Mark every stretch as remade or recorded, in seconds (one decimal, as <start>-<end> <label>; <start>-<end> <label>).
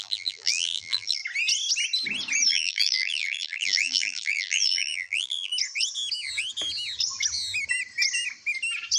0.0-1.2 remade; 1.2-2.5 recorded; 2.5-5.5 remade; 5.5-9.0 recorded